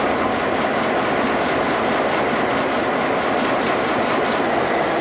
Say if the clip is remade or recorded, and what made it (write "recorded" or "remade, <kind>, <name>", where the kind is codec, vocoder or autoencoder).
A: recorded